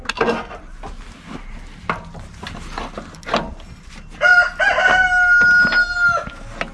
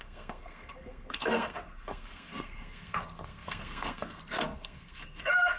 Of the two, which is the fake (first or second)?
second